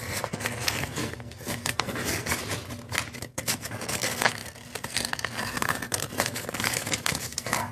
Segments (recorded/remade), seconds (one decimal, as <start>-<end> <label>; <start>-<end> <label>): 0.0-2.4 remade; 2.4-3.2 recorded; 3.2-7.7 remade